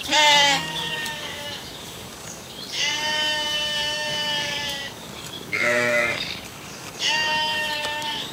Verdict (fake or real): fake